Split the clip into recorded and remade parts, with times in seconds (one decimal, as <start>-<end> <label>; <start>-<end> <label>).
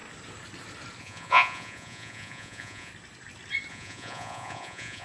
0.0-1.0 recorded; 1.0-2.9 remade; 2.9-3.7 recorded; 3.7-5.0 remade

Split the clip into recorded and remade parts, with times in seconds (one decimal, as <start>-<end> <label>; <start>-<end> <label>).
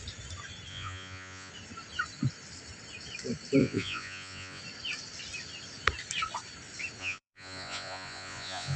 0.0-0.7 recorded; 0.7-1.5 remade; 1.5-3.6 recorded; 3.6-4.6 remade; 4.6-7.0 recorded; 7.0-8.8 remade